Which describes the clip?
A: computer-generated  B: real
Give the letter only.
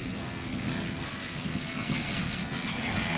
A